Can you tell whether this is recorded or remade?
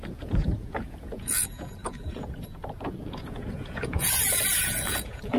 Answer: remade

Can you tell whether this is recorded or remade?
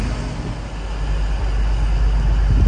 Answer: recorded